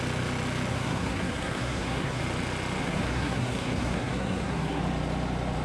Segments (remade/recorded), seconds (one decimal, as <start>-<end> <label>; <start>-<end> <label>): 0.0-0.7 recorded; 0.7-2.2 remade; 2.2-2.8 recorded; 2.8-4.8 remade; 4.8-5.6 recorded